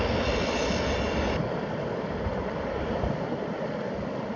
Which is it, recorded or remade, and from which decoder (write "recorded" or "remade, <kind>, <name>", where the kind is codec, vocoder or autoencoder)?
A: recorded